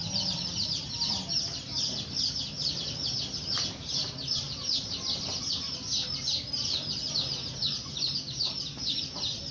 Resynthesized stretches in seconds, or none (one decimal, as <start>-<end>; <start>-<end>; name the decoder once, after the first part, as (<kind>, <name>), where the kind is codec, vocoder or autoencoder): none